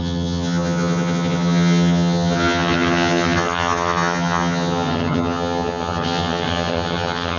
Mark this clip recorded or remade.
remade